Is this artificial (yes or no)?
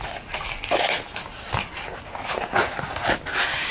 no